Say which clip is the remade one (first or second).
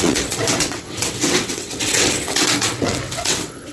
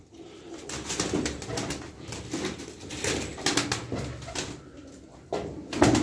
first